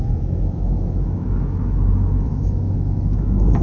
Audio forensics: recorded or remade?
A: remade